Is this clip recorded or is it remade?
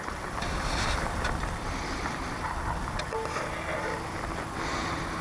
recorded